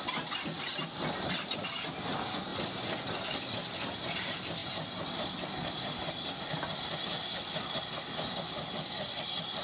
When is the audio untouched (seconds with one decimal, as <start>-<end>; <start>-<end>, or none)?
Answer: 0.0-2.5; 3.0-9.6

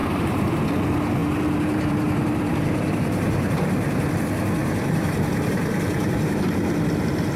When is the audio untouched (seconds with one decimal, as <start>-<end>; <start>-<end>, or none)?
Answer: 0.6-1.2; 4.1-4.6; 6.4-7.4

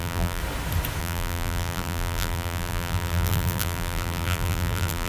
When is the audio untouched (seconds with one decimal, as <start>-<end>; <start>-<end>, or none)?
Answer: 0.4-1.0

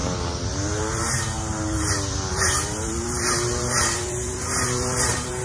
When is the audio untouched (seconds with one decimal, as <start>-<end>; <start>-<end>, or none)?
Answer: none

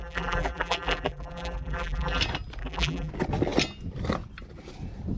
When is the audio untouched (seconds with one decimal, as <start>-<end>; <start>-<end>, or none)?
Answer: 2.2-2.6; 3.1-5.2

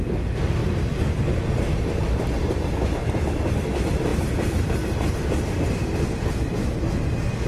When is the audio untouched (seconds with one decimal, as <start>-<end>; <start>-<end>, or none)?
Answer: 0.0-3.0; 3.6-7.5

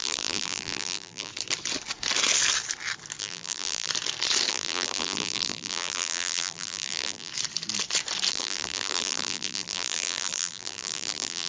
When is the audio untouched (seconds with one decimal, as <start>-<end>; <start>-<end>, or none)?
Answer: 1.3-3.2; 3.9-4.5; 7.3-8.3

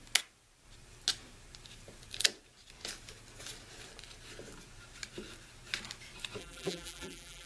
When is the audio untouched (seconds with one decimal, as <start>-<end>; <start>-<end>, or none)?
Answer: 0.0-6.4